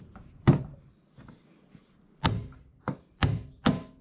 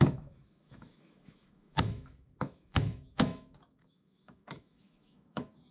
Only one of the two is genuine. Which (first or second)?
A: first